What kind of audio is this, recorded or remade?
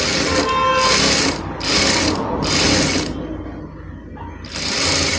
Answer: recorded